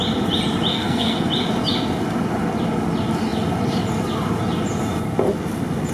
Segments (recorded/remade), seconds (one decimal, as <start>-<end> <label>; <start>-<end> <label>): 0.0-0.7 recorded; 0.7-1.3 remade; 1.3-5.9 recorded